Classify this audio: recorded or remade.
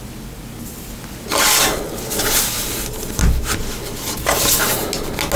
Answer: recorded